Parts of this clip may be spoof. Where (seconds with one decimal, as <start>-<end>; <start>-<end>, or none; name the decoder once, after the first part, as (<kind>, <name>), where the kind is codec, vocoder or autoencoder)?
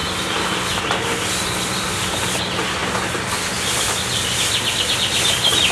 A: none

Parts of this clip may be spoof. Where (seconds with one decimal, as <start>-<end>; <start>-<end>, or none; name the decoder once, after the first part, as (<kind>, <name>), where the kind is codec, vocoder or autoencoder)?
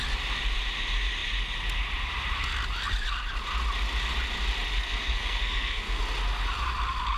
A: 4.7-6.0 (codec, SNAC)